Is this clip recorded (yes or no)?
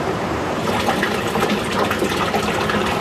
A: yes